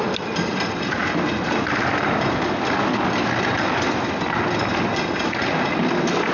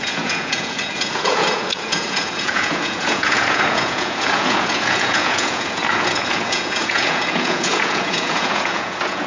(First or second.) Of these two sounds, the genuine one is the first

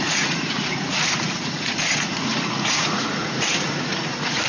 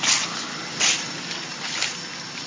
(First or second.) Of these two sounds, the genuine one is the second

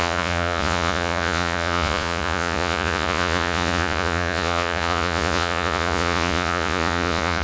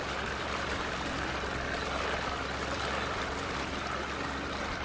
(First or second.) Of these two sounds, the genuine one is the second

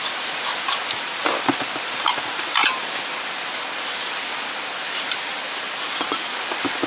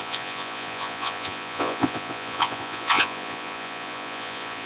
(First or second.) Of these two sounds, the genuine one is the first